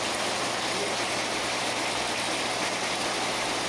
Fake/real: real